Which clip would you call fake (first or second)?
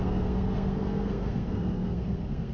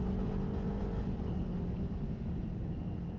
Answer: first